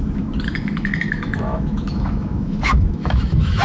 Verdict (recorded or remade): remade